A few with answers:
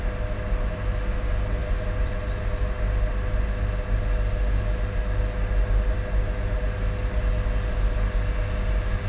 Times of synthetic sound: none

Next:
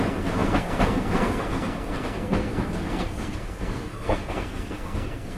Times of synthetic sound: 0.0-5.4 (codec, SNAC)

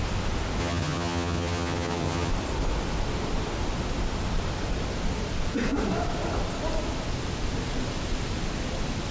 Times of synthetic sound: 0.6-2.3 (vocoder, HiFi-GAN)